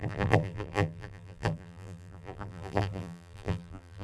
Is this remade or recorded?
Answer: remade